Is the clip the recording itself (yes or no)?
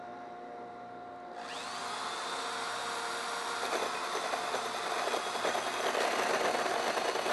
yes